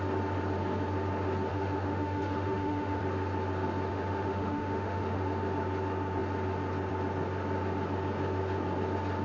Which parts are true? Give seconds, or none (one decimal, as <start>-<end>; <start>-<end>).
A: 0.0-1.5; 3.0-3.9; 5.2-9.2